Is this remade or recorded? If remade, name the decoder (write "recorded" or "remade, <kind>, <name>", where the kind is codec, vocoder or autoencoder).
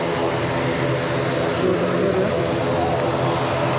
recorded